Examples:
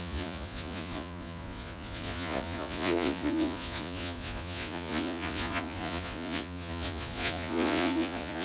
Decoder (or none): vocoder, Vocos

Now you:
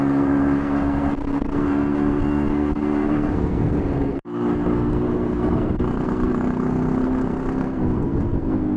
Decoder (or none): codec, SNAC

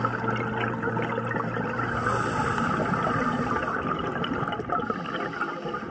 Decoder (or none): none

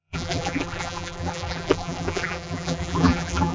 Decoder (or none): vocoder, BigVGAN v2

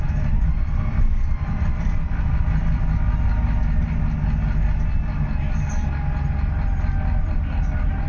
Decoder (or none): none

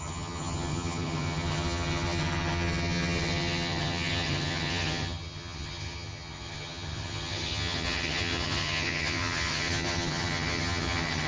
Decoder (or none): vocoder, HiFi-GAN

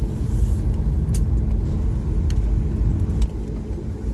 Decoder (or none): none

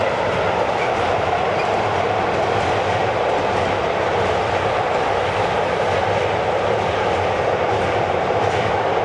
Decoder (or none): none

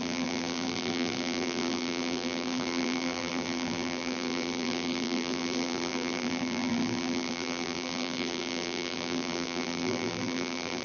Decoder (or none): vocoder, BigVGAN v2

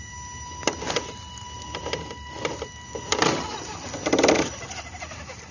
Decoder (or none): vocoder, BigVGAN v2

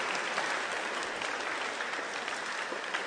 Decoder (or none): none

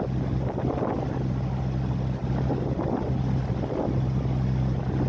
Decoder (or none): none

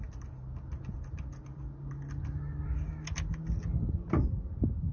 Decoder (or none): none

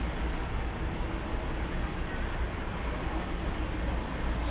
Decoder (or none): none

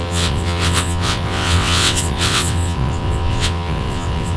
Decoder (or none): vocoder, WaveNeXt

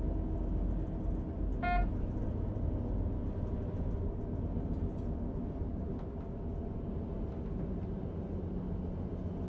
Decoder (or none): none